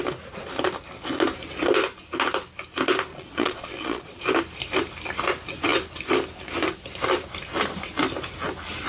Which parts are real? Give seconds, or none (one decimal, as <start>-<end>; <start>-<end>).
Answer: 0.0-3.1; 4.2-8.9